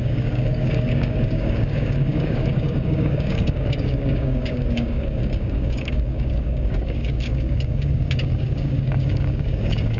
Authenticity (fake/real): fake